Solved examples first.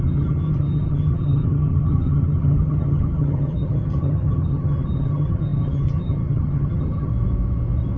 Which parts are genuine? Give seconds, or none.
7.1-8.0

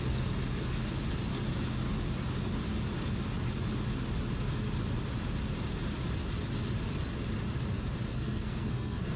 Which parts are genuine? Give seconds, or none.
0.0-8.1

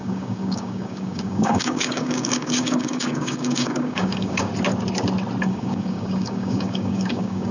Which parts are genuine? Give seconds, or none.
4.5-5.4

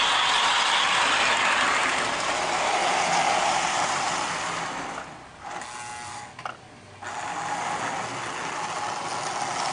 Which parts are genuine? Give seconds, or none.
0.0-1.9; 4.2-9.7

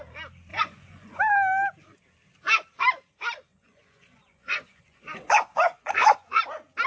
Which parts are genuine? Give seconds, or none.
0.0-0.5; 1.2-3.5; 6.3-6.9

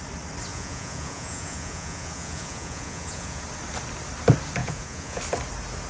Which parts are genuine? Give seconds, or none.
0.0-0.5; 3.4-4.6; 5.2-5.9